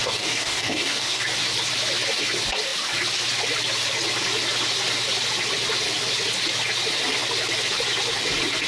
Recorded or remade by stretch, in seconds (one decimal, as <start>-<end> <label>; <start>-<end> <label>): 0.0-1.2 remade; 1.2-8.7 recorded